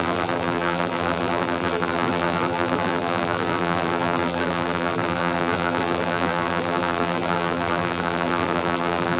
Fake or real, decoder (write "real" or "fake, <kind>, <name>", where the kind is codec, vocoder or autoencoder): fake, vocoder, BigVGAN v2